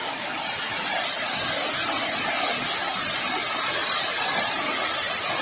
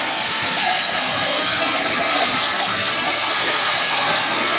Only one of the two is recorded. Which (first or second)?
first